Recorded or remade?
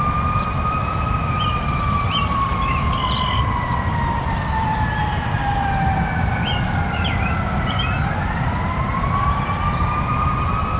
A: remade